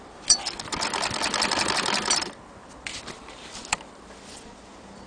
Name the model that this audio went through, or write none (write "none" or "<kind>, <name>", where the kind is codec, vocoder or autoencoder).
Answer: vocoder, BigVGAN v2